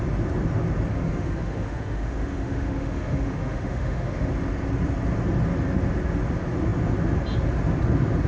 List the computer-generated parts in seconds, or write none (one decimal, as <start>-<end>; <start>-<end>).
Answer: 0.9-4.3